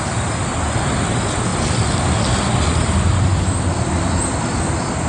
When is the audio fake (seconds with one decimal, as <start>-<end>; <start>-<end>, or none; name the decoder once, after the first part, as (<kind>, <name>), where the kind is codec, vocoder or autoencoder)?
none